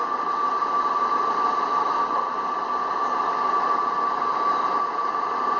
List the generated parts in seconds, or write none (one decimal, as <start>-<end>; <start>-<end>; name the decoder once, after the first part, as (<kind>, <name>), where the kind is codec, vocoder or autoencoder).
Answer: none